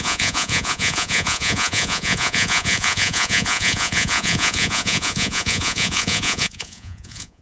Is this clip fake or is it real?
fake